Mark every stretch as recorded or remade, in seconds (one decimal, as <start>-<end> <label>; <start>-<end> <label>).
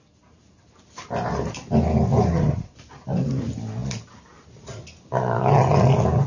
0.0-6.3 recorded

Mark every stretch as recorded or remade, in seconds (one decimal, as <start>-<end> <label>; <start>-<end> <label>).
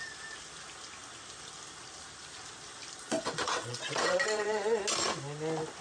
0.0-3.0 recorded; 3.0-4.8 remade; 4.8-5.8 recorded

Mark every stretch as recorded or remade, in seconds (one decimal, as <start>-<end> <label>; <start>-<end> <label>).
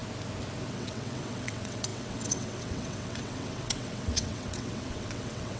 0.0-0.7 recorded; 0.7-5.6 remade